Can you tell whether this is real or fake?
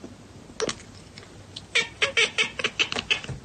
real